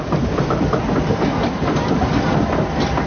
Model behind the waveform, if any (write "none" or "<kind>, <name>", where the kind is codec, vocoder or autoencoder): none